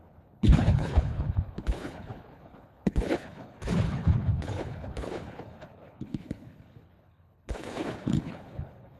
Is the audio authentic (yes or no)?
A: no